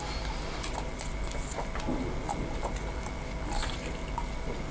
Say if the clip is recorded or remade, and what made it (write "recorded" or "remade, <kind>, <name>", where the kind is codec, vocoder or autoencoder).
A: recorded